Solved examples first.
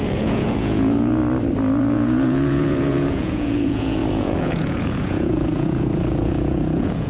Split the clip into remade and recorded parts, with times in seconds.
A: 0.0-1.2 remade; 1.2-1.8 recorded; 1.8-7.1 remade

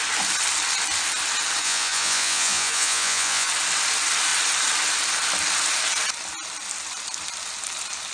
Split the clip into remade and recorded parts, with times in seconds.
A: 0.0-1.6 recorded; 1.6-3.5 remade; 3.5-8.1 recorded

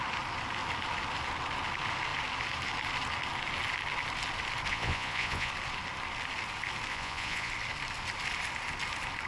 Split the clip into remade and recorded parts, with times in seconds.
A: 0.0-4.7 recorded; 4.7-5.5 remade; 5.5-6.9 recorded; 6.9-7.5 remade; 7.5-9.3 recorded

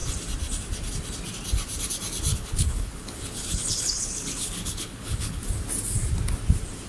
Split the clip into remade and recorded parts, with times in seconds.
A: 0.0-2.3 recorded; 2.3-5.4 remade; 5.4-6.9 recorded

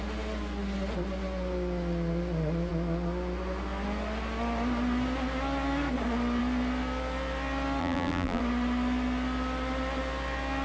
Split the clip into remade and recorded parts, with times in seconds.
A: 0.0-7.8 recorded; 7.8-8.4 remade; 8.4-10.6 recorded

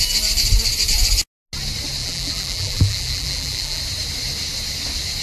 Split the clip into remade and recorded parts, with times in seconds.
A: 0.0-2.0 recorded; 2.0-3.8 remade; 3.8-5.2 recorded

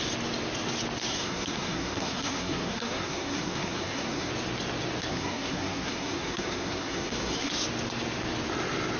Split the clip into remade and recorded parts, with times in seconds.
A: 0.0-1.1 recorded; 1.1-4.3 remade; 4.3-5.1 recorded; 5.1-7.5 remade; 7.5-9.0 recorded

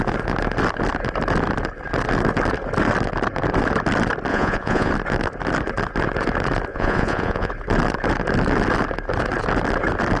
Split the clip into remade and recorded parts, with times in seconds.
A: 0.0-4.3 recorded; 4.3-4.9 remade; 4.9-6.7 recorded; 6.7-7.5 remade; 7.5-10.2 recorded